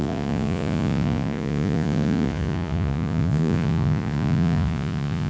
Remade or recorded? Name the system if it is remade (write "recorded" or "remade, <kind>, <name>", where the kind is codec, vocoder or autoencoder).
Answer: remade, vocoder, Vocos